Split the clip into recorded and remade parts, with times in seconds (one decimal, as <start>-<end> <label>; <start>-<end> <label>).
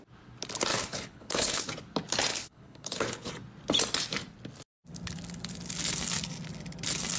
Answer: 0.0-0.7 recorded; 0.7-1.7 remade; 1.7-2.3 recorded; 2.3-3.3 remade; 3.3-7.2 recorded